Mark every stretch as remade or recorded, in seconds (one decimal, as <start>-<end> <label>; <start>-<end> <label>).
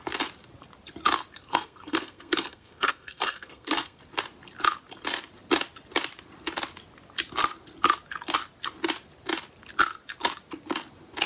0.0-1.5 recorded; 1.5-4.0 remade; 4.0-11.3 recorded